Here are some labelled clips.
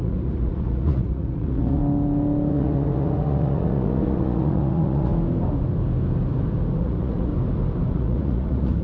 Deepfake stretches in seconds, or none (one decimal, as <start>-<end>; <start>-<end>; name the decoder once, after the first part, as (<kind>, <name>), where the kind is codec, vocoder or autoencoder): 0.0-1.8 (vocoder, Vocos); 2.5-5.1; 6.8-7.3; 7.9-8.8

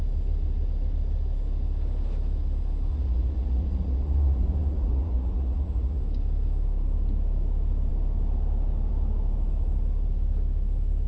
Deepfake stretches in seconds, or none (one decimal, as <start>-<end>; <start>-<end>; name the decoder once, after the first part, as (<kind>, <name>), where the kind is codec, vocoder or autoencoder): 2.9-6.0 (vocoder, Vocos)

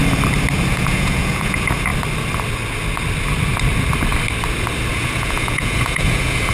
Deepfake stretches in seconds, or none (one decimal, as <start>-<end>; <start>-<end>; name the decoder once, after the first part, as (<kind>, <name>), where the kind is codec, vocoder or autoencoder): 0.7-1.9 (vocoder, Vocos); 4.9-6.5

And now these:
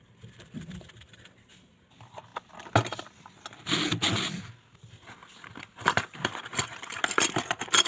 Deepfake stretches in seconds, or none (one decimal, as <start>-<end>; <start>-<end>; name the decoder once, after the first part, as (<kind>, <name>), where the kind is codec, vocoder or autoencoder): none

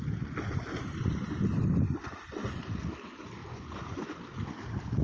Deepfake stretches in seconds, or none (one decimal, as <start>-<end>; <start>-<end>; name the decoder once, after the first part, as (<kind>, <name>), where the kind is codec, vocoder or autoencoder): 3.4-4.2 (vocoder, Vocos)

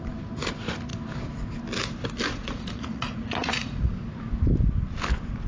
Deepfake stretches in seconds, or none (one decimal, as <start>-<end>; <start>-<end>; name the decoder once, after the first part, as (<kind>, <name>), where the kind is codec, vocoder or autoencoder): 2.3-3.9 (vocoder, Vocos)

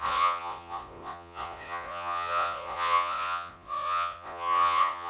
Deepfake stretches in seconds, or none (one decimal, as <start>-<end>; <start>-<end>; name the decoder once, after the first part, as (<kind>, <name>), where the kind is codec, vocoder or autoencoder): 0.0-5.1 (vocoder, Vocos)